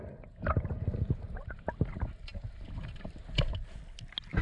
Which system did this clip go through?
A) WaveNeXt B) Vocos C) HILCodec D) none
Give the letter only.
D